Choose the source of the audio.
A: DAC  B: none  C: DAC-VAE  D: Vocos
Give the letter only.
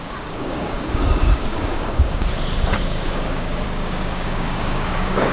A